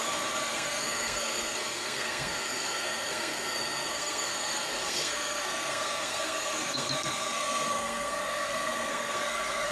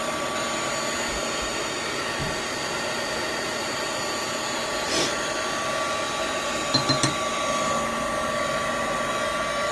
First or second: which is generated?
first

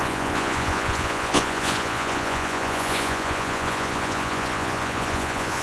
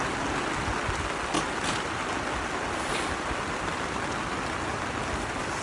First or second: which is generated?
first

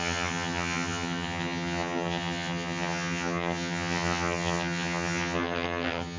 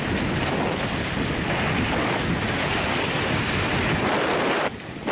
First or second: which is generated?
first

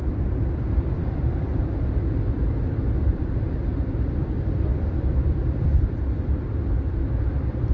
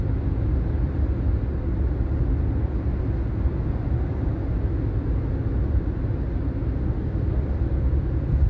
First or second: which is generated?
first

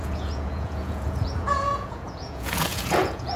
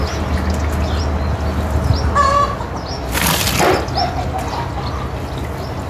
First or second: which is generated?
first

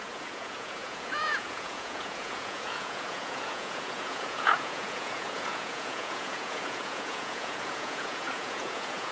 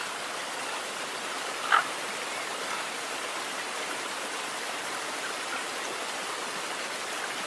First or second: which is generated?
first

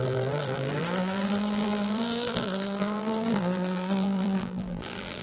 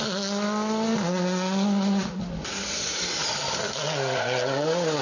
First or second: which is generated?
first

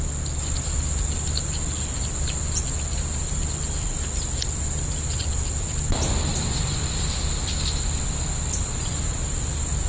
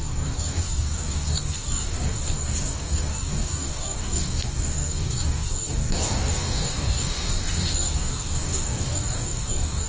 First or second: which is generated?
second